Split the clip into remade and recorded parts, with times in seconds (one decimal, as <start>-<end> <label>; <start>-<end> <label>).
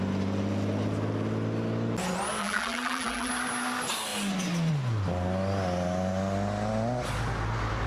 0.0-2.4 recorded; 2.4-3.3 remade; 3.3-7.9 recorded